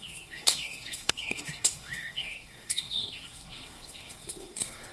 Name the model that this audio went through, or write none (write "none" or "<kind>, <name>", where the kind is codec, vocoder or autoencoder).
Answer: codec, SNAC